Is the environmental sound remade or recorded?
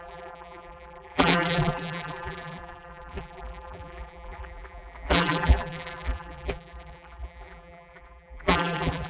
remade